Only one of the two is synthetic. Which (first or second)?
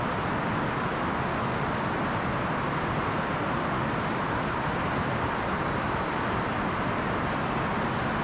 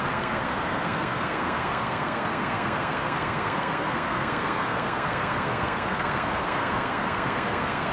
second